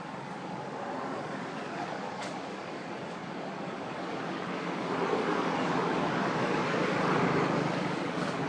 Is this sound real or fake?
fake